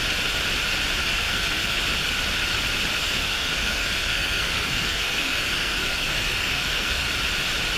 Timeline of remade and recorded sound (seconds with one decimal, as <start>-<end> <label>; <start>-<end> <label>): 0.0-1.0 recorded; 1.0-1.8 remade; 1.8-3.0 recorded; 3.0-7.1 remade; 7.1-7.8 recorded